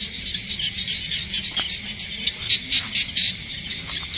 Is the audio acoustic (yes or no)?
yes